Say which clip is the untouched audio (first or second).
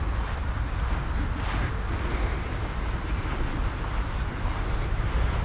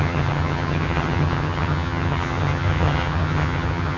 first